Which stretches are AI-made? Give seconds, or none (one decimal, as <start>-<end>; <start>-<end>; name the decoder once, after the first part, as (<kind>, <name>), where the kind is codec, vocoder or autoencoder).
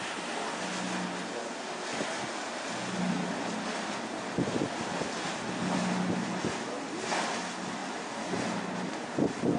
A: none